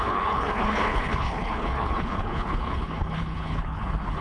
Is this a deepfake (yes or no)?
yes